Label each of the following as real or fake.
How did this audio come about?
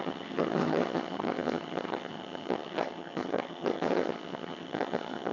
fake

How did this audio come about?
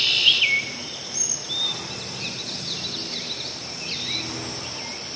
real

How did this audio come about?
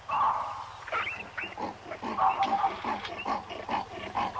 real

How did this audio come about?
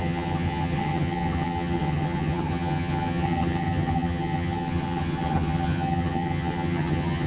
fake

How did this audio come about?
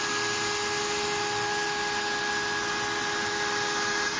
real